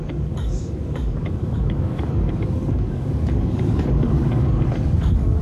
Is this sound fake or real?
fake